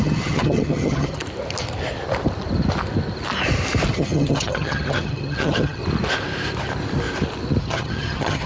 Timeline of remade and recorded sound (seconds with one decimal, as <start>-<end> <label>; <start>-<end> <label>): 0.0-1.2 remade; 1.2-3.9 recorded; 3.9-5.8 remade; 5.8-7.6 recorded; 7.6-8.5 remade